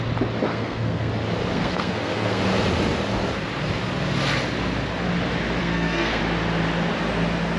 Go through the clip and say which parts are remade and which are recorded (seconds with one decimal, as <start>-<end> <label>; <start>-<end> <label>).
0.0-0.5 recorded; 0.5-1.1 remade; 1.1-1.5 recorded; 1.5-2.4 remade; 2.4-5.6 recorded; 5.6-6.2 remade; 6.2-7.6 recorded